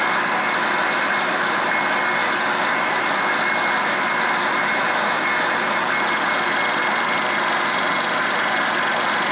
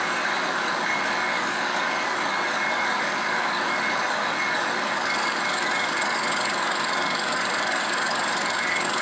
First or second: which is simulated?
second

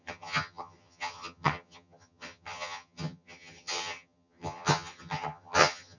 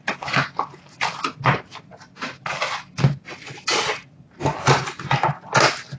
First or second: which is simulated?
first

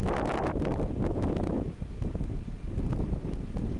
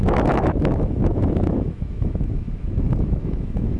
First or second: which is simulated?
second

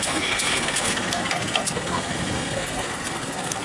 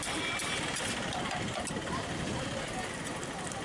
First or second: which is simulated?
first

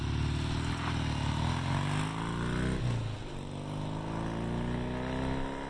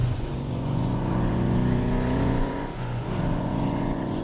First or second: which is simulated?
second